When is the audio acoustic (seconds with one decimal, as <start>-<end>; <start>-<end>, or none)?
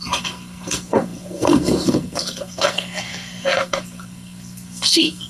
none